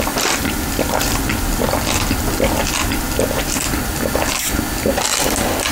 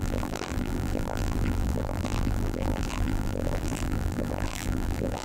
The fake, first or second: second